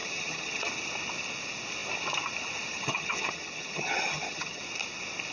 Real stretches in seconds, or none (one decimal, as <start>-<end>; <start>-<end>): 0.7-2.7; 4.6-5.3